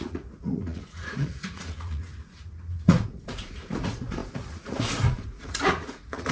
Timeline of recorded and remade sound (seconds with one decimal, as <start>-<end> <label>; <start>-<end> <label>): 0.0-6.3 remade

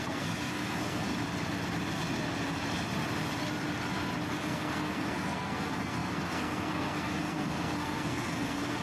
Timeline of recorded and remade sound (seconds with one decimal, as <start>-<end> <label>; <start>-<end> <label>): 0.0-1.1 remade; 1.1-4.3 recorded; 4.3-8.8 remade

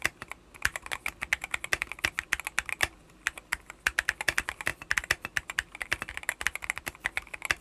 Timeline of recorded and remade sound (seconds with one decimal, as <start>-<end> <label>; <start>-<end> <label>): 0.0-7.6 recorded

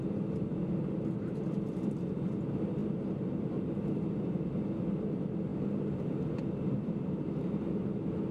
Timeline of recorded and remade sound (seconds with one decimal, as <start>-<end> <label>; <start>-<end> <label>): 0.0-8.3 recorded

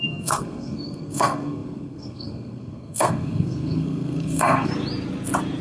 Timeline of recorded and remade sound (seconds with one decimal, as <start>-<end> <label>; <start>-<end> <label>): 0.0-4.7 remade; 4.7-5.6 recorded